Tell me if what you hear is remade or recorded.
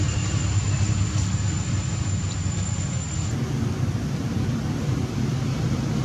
recorded